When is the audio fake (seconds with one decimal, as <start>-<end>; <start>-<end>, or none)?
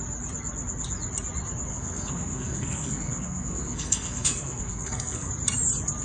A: 1.7-5.3